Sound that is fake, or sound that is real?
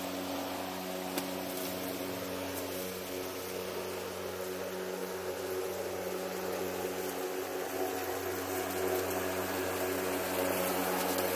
real